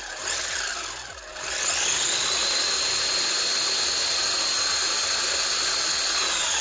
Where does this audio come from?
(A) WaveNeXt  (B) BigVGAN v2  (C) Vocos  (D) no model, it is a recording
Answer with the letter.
D